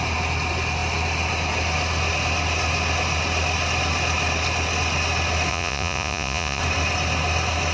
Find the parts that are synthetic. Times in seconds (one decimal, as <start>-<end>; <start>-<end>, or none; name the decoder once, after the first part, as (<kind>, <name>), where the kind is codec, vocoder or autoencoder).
5.5-6.6 (vocoder, Vocos)